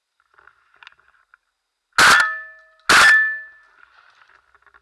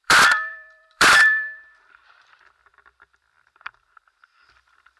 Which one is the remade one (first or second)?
second